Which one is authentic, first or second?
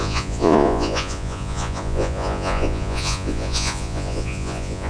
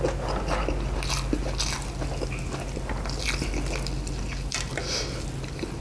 second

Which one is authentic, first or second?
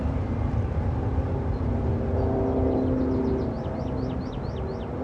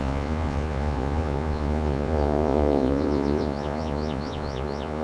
first